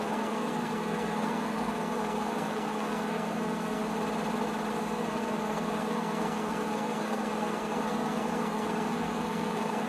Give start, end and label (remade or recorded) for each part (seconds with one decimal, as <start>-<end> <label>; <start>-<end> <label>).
0.0-3.8 remade; 3.8-4.7 recorded; 4.7-9.9 remade